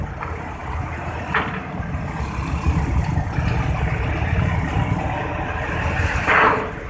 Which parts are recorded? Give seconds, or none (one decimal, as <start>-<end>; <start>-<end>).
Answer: 0.0-6.9